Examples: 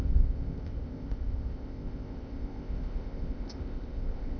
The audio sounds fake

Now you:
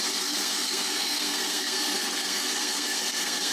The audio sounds fake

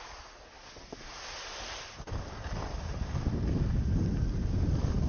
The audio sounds real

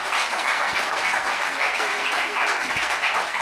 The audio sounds fake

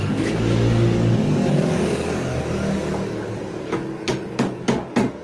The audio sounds fake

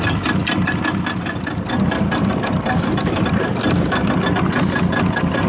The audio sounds real